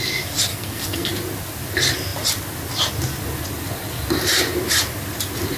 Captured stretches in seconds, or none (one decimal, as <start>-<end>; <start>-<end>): 0.0-0.5; 1.1-5.6